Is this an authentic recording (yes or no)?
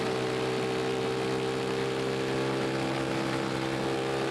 yes